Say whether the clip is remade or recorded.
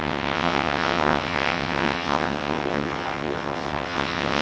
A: remade